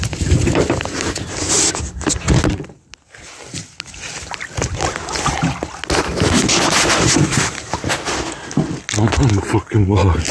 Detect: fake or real real